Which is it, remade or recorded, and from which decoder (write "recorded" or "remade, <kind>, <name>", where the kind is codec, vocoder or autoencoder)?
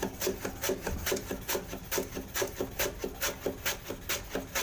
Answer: recorded